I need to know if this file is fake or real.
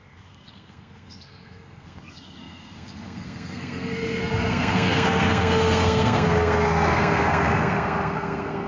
fake